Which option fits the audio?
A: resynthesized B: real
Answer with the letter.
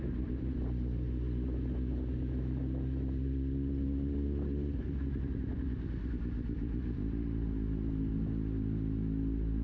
B